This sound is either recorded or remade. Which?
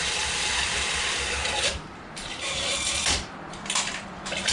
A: remade